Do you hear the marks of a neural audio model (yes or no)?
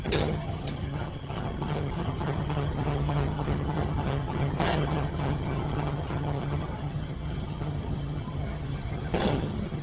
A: yes